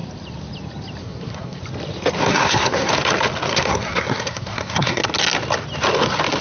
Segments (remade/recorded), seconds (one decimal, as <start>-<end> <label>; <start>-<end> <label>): 0.0-1.0 recorded; 1.0-1.6 remade; 1.6-2.2 recorded; 2.2-2.9 remade; 2.9-3.5 recorded; 3.5-5.0 remade; 5.0-6.4 recorded